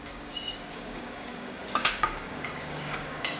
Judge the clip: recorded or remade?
remade